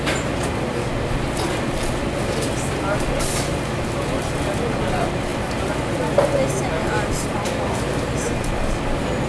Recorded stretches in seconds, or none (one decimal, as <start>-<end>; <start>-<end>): 0.0-9.3